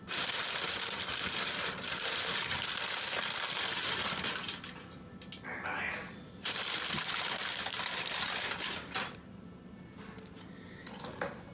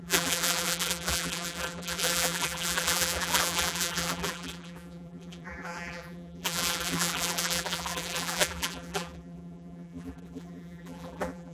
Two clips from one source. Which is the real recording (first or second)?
first